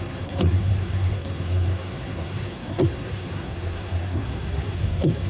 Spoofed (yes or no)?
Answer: yes